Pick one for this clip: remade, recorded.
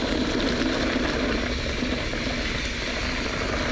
recorded